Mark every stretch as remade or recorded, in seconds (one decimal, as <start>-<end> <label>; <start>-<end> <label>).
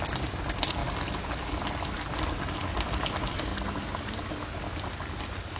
0.0-5.6 recorded